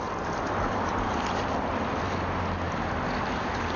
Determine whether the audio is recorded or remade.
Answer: recorded